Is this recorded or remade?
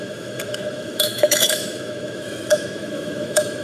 remade